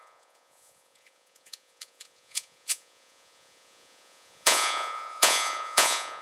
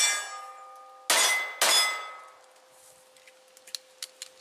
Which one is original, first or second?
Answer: second